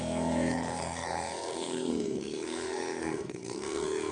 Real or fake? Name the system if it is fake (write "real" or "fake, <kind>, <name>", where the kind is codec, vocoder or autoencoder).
fake, codec, SNAC